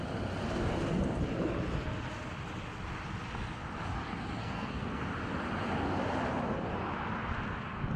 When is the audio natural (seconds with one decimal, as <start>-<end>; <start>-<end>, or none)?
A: 0.0-4.4; 5.0-8.0